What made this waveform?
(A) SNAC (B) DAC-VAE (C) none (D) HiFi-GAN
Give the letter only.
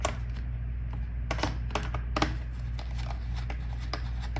C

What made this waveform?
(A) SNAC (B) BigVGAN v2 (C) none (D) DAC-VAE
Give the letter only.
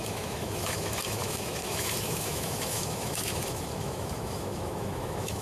D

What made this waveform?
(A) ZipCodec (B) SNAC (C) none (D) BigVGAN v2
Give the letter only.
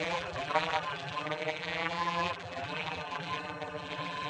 D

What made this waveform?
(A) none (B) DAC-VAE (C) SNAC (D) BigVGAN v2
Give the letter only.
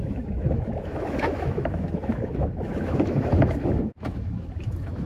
B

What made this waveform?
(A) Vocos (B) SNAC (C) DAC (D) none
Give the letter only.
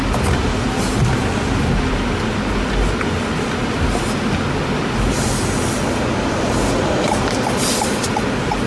D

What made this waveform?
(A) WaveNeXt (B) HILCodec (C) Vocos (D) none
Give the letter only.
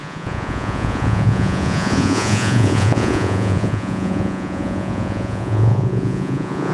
C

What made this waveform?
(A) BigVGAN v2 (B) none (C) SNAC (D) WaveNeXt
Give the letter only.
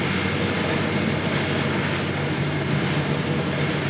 B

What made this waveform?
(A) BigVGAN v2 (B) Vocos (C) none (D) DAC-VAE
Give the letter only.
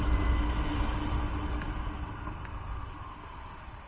C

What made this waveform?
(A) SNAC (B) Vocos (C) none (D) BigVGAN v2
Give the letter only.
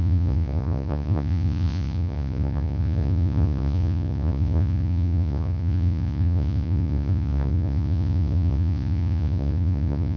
B